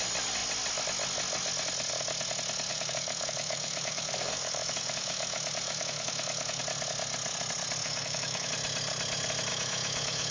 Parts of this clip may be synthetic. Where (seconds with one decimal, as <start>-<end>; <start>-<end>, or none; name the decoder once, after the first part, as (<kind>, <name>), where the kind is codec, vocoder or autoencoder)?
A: 2.7-6.6 (autoencoder, DAC-VAE); 7.8-8.5; 9.5-10.3